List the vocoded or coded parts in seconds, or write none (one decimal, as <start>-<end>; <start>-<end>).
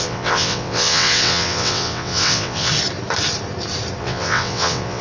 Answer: 0.0-2.7; 4.0-5.0